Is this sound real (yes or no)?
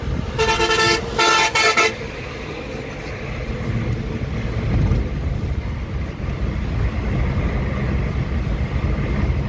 yes